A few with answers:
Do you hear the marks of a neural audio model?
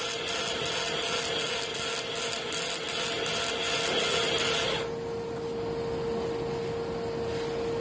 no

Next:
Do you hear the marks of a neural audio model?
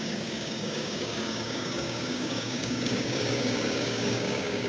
yes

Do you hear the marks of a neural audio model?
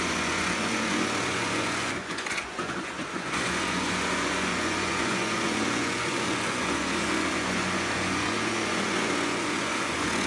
yes